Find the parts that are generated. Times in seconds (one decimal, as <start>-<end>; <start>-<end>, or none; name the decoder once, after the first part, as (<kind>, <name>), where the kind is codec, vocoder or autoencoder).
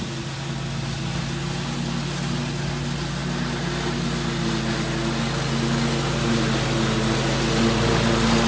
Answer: none